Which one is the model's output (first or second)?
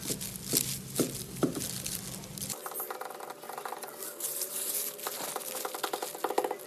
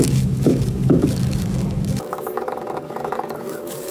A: second